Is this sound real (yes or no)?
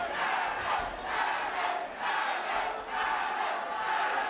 yes